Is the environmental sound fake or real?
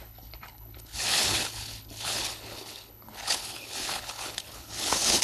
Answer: fake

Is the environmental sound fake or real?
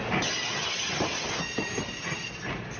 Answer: real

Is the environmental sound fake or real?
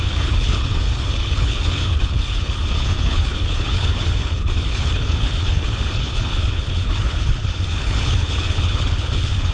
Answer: fake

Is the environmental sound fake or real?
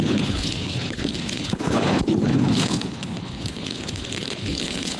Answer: fake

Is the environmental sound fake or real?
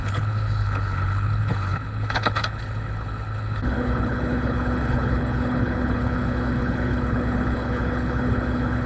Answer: fake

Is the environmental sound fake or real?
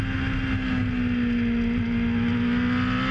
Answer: real